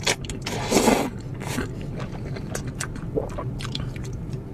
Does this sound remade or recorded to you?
recorded